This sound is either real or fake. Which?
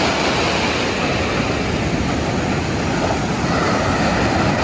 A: real